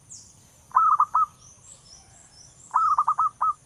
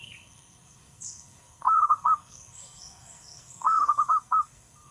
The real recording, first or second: first